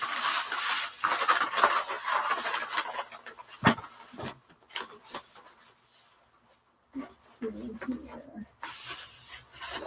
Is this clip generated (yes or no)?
no